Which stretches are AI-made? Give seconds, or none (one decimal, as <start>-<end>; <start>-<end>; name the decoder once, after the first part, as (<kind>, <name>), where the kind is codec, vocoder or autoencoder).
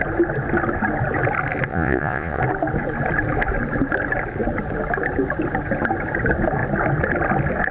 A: 1.7-2.4 (vocoder, Vocos)